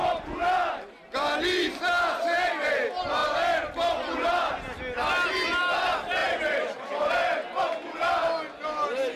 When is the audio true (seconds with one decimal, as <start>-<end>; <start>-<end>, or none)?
0.0-3.2; 4.8-6.2; 7.1-9.2